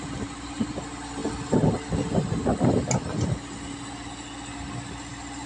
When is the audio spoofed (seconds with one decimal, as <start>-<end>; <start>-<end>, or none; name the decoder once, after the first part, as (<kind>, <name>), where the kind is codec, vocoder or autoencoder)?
none